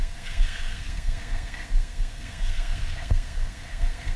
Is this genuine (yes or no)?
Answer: no